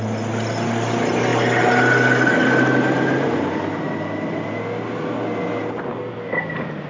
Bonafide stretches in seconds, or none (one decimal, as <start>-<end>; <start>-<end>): 0.0-6.9